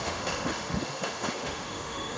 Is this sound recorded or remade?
remade